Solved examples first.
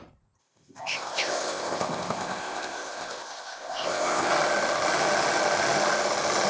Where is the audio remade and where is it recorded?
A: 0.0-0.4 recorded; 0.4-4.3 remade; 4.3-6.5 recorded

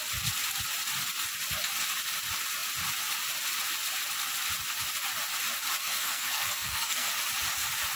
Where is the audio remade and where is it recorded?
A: 0.0-5.8 recorded; 5.8-7.1 remade; 7.1-8.0 recorded

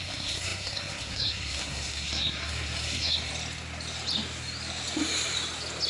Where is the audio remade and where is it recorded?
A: 0.0-3.3 remade; 3.3-5.9 recorded

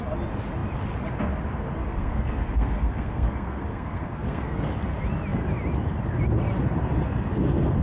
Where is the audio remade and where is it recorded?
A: 0.0-1.9 recorded; 1.9-4.7 remade; 4.7-7.8 recorded